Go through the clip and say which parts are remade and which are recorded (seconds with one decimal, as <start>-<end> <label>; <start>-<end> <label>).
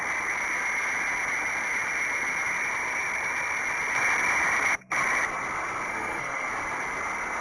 0.0-5.9 recorded; 5.9-6.5 remade; 6.5-7.4 recorded